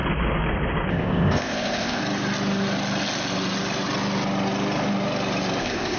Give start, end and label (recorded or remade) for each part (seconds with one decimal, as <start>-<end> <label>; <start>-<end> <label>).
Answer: 0.0-0.9 recorded; 0.9-2.0 remade; 2.0-5.6 recorded; 5.6-6.0 remade